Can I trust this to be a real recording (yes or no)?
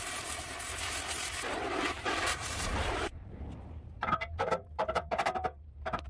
no